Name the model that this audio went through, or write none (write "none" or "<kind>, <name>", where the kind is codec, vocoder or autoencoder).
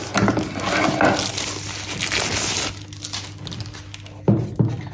none